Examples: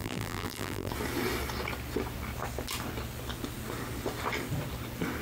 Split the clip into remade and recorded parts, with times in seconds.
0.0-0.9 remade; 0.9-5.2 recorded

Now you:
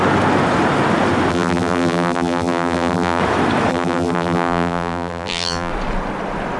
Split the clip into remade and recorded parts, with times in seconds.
0.0-1.3 recorded; 1.3-3.2 remade; 3.2-3.7 recorded; 3.7-5.7 remade; 5.7-6.6 recorded

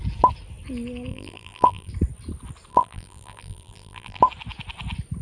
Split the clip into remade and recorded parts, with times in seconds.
0.0-1.1 recorded; 1.1-1.9 remade; 1.9-2.7 recorded; 2.7-4.2 remade; 4.2-5.2 recorded

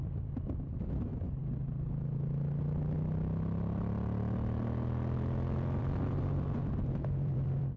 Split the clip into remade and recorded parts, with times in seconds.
0.0-1.4 remade; 1.4-5.8 recorded; 5.8-7.8 remade